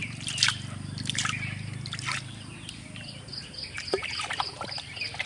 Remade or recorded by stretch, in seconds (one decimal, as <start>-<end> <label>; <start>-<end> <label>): 0.0-5.3 recorded